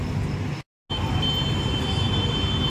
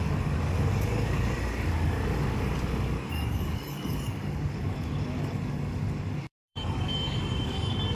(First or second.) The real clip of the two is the first